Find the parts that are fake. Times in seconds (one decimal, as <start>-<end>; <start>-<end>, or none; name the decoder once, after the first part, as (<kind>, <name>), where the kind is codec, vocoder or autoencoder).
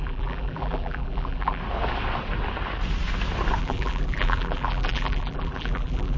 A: 0.0-1.6 (vocoder, BigVGAN v2); 3.6-6.2